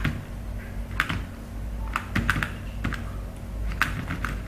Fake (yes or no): no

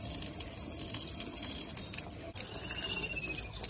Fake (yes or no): no